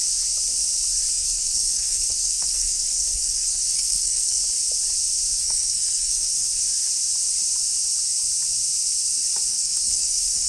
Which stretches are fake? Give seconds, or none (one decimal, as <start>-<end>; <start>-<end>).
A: 1.1-4.4; 5.4-6.6; 9.5-10.5